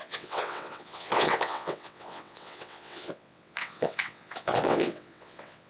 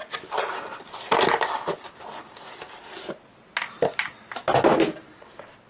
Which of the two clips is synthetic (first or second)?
first